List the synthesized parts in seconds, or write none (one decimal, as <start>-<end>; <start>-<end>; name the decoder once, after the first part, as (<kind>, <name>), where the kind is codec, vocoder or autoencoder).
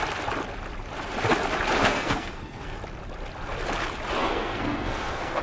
1.8-2.8 (codec, SNAC); 4.2-5.4